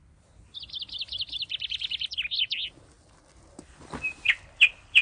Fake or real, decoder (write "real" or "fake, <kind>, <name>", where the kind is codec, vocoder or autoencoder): real